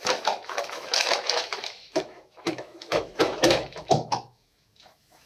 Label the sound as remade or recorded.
remade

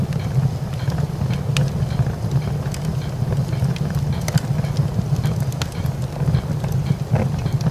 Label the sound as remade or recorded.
recorded